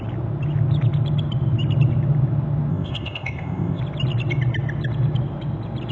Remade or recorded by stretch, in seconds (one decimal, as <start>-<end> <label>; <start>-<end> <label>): 0.0-2.7 recorded; 2.7-3.8 remade; 3.8-5.9 recorded